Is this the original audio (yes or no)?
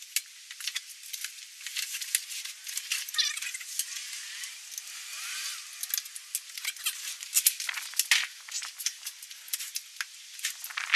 yes